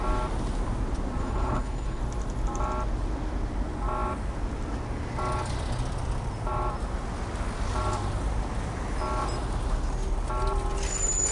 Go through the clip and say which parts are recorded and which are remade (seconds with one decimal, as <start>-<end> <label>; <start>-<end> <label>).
0.0-1.2 recorded; 1.2-2.0 remade; 2.0-11.3 recorded